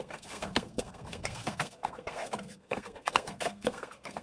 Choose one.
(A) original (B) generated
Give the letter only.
B